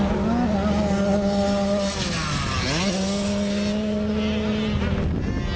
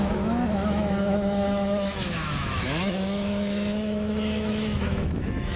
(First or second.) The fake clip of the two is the second